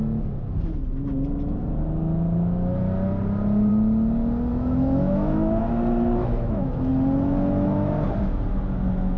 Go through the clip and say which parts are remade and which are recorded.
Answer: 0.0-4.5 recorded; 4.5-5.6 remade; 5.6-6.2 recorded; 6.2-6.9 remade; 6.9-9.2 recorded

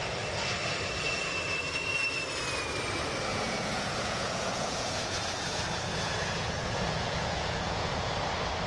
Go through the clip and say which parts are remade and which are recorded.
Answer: 0.0-3.3 recorded; 3.3-8.1 remade; 8.1-8.7 recorded

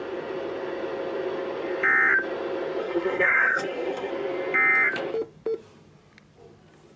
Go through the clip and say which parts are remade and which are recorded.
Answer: 0.0-2.8 recorded; 2.8-4.1 remade; 4.1-7.0 recorded

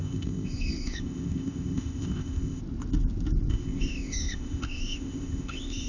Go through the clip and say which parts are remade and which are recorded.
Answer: 0.0-2.6 remade; 2.6-3.5 recorded; 3.5-5.9 remade

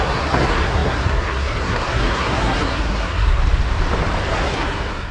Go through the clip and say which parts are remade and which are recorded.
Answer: 0.0-3.4 remade; 3.4-4.3 recorded; 4.3-5.1 remade

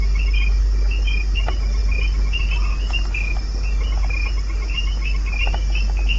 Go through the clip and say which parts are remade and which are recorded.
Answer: 0.0-6.2 recorded

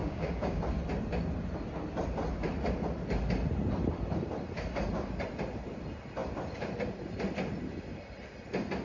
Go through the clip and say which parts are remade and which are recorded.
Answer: 0.0-0.6 remade; 0.6-8.8 recorded

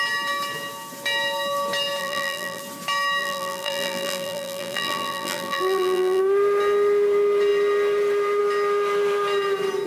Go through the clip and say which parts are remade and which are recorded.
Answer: 0.0-2.0 recorded; 2.0-2.6 remade; 2.6-3.2 recorded; 3.2-6.2 remade; 6.2-9.9 recorded